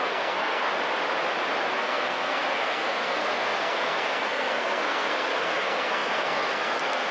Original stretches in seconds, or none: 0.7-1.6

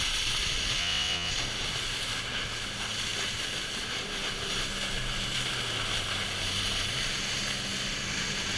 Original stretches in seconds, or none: 0.0-0.8; 1.3-8.6

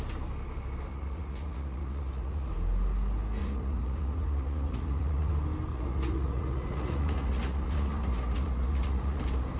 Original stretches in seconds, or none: 0.0-0.9; 2.5-3.4; 5.3-5.7; 9.2-9.6

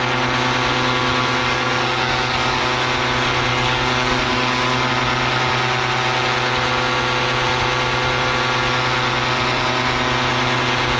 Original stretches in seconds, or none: 0.0-1.4; 2.6-3.5; 4.9-11.0

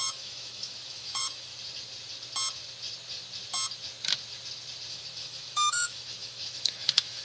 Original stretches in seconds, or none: 1.5-4.9

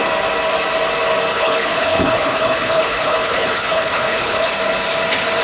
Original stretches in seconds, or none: 0.0-1.3; 4.5-5.4